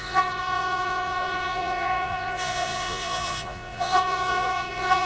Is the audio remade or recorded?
remade